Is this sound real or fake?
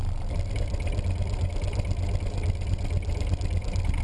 real